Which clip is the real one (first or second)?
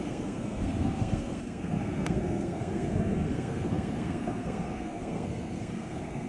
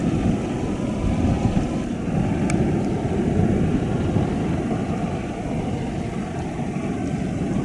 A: second